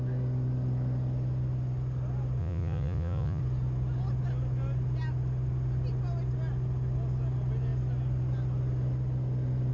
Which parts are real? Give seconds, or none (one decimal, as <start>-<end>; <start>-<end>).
0.0-2.4; 3.4-9.7